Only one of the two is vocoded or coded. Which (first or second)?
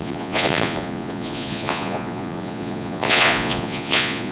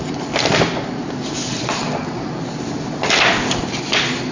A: first